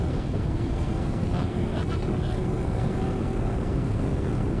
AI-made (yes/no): yes